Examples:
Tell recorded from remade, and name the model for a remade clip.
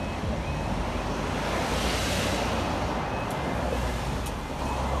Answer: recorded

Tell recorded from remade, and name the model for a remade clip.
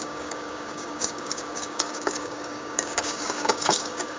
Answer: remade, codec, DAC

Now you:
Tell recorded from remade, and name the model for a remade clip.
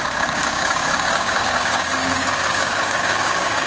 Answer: remade, codec, DAC